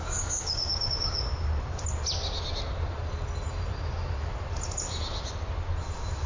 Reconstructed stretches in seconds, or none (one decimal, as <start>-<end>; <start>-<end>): 0.0-1.3